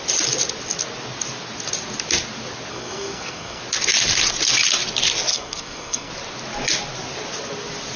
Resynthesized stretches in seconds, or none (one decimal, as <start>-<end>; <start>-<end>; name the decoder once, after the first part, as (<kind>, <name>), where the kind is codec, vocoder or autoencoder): 2.7-3.6 (codec, SNAC); 5.3-6.1